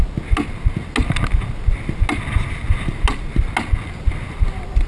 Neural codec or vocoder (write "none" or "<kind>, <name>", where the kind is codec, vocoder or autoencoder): none